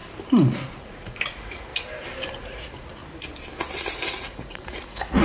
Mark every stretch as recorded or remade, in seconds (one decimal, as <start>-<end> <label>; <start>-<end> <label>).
0.0-0.8 recorded; 0.8-1.7 remade; 1.7-2.4 recorded; 2.4-3.0 remade; 3.0-4.1 recorded; 4.1-5.2 remade